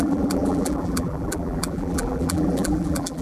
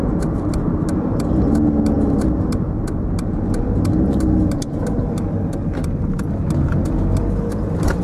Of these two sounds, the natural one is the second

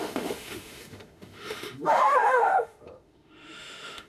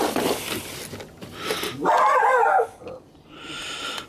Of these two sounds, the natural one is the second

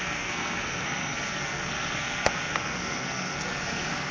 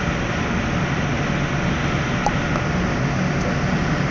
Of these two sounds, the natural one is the second